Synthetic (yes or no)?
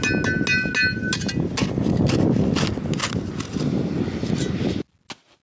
no